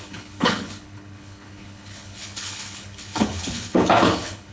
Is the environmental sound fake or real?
fake